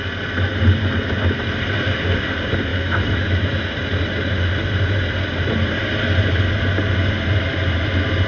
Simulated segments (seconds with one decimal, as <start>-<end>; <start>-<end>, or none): 2.7-3.7